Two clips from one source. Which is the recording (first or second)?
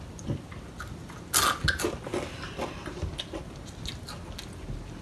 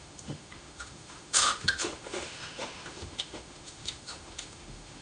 first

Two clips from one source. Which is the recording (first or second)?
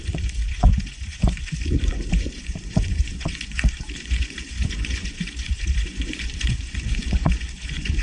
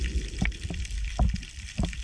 second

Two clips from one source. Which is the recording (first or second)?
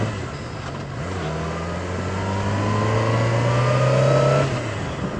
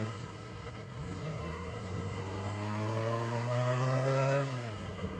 first